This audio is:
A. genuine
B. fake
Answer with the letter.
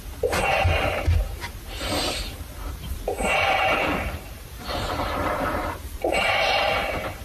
B